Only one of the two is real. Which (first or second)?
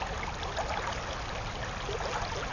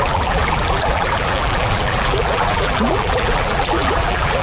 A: first